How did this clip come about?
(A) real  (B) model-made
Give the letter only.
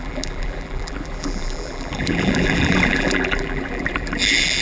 B